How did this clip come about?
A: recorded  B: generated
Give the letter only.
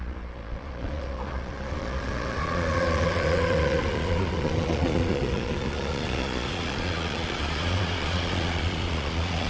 B